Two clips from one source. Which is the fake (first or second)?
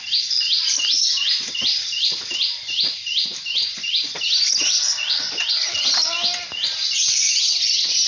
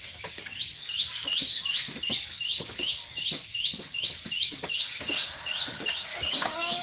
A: second